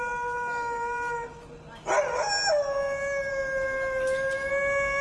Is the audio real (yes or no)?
yes